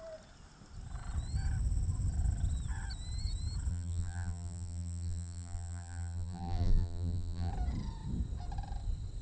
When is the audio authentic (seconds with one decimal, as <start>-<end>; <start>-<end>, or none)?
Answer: 0.0-3.7; 7.5-9.2